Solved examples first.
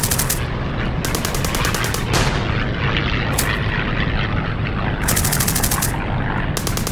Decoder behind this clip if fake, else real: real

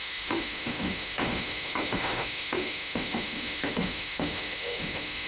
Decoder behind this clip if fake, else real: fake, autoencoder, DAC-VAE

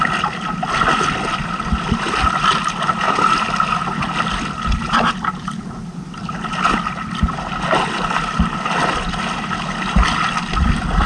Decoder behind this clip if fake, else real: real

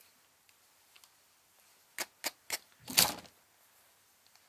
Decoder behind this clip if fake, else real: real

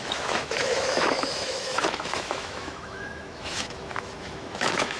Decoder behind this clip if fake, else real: fake, autoencoder, DAC-VAE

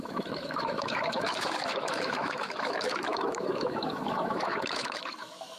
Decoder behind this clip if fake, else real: fake, autoencoder, DAC-VAE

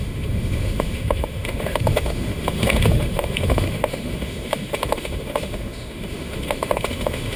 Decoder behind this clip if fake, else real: fake, autoencoder, DAC-VAE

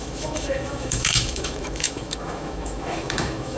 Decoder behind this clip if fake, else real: fake, autoencoder, DAC-VAE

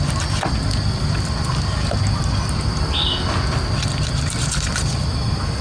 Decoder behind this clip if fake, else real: real